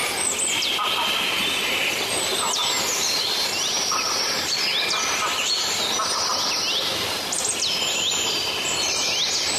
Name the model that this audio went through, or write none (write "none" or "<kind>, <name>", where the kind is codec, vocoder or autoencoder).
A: none